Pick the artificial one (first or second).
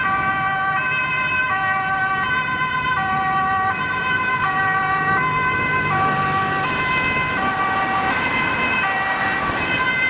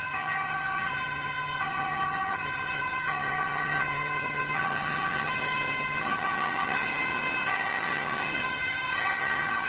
second